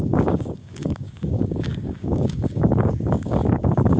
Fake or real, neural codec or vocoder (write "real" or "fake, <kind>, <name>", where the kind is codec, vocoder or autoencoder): fake, codec, DAC